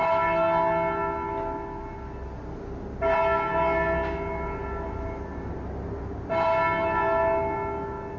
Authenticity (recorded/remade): recorded